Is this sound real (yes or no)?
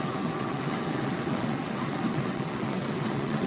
no